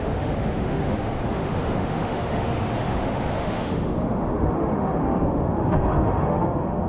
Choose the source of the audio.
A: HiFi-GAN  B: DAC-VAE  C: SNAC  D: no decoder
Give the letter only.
B